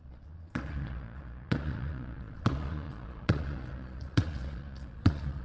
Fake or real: fake